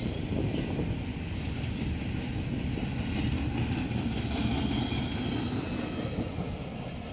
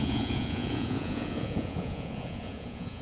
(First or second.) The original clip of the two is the first